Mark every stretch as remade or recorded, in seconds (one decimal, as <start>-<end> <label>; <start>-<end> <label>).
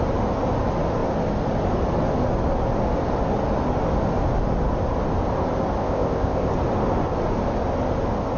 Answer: 0.0-5.8 recorded; 5.8-6.5 remade; 6.5-8.4 recorded